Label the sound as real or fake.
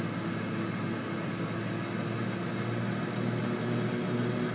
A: real